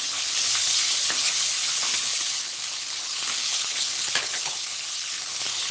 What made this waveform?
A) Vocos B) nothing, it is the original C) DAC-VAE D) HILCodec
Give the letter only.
D